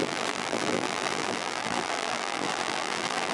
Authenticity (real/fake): fake